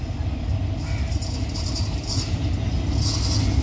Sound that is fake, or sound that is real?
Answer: real